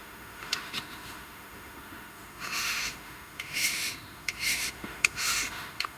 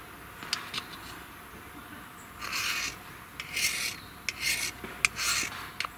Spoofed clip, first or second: first